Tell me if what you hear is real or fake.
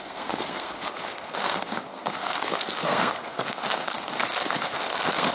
fake